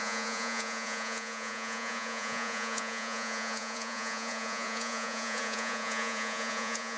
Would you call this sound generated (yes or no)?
yes